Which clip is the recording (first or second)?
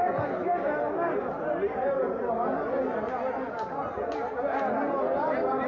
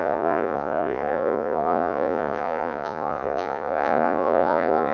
first